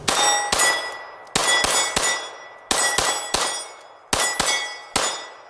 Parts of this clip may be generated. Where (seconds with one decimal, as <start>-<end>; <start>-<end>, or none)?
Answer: none